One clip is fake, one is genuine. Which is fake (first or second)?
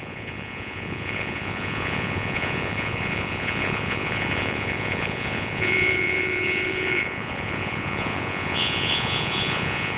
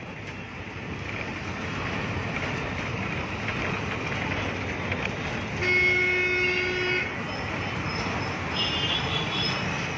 first